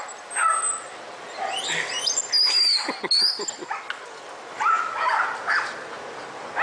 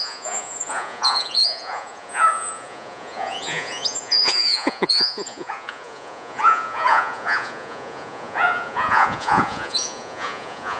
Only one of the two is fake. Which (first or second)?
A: second